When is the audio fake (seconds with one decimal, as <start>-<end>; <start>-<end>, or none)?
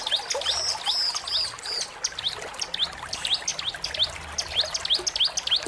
none